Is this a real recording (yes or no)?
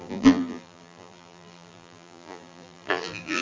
no